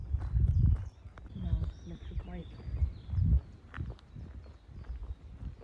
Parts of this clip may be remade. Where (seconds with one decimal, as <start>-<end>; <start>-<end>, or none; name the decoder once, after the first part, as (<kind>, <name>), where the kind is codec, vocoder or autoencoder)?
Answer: 0.0-0.6 (vocoder, BigVGAN v2); 2.4-4.1